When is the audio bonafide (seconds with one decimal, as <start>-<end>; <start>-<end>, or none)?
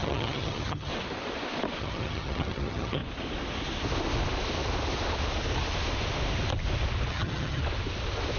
0.9-1.8; 3.0-7.1; 7.6-8.4